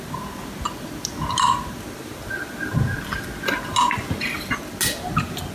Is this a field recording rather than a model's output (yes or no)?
yes